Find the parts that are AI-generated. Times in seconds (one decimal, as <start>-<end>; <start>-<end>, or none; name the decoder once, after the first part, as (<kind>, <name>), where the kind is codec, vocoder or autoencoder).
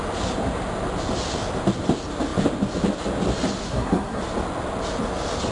3.6-4.2 (codec, SNAC)